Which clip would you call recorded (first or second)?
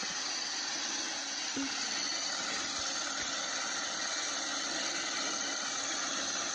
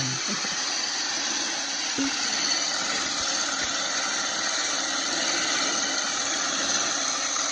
first